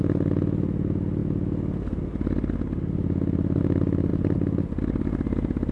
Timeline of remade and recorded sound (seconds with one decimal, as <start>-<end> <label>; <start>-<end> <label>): 0.0-5.7 recorded